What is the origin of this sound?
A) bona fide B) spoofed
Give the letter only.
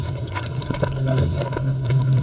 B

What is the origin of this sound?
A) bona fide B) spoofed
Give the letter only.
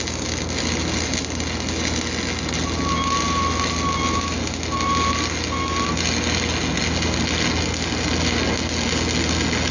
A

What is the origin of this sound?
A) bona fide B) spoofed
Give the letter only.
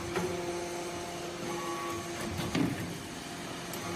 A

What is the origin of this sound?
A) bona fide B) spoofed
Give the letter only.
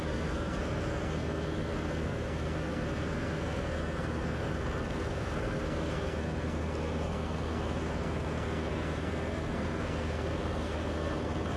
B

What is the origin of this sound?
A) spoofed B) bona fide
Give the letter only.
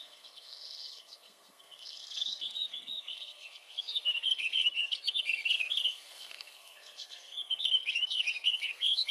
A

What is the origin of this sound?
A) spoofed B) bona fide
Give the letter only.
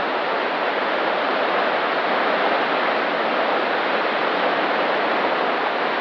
B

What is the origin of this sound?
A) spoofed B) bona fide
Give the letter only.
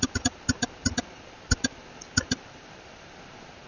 B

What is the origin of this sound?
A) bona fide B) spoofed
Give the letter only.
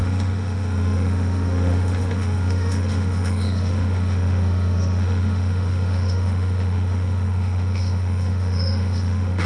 B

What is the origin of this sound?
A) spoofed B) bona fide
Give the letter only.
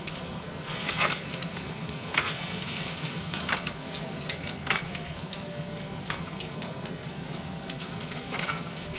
A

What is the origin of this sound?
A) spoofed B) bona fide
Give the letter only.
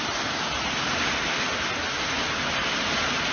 B